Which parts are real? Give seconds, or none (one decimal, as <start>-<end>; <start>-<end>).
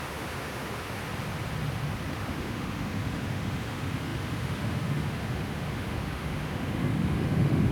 1.0-2.1